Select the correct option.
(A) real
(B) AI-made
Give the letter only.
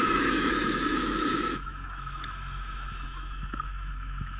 B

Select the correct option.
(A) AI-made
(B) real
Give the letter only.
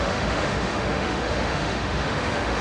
A